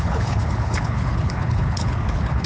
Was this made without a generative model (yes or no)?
no